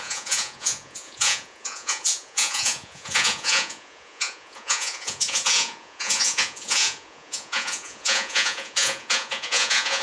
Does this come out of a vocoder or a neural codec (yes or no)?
yes